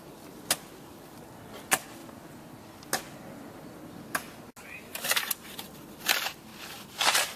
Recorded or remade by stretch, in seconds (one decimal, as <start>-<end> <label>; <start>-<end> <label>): 0.0-7.4 recorded